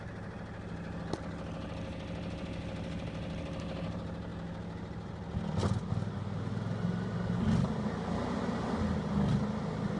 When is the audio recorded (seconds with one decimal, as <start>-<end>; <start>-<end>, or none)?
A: 0.0-10.0